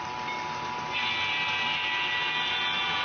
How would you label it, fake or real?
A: real